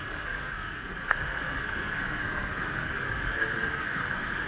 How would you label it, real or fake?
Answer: fake